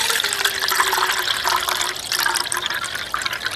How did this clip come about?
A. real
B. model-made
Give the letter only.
A